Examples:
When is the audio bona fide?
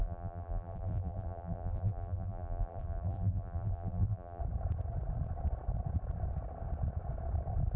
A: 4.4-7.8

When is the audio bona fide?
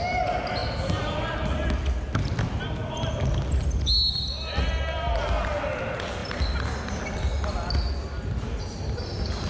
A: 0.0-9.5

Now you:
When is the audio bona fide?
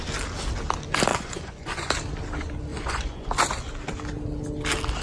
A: 0.0-1.1; 1.9-2.7; 3.3-5.0